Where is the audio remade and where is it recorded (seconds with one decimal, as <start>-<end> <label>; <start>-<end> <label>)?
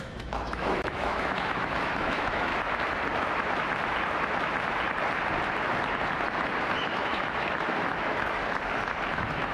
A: 0.0-2.5 remade; 2.5-6.8 recorded; 6.8-8.4 remade; 8.4-9.1 recorded; 9.1-9.5 remade